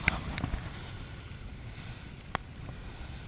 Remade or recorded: recorded